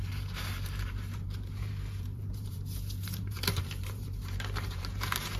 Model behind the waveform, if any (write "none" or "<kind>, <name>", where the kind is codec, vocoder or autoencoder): vocoder, BigVGAN v2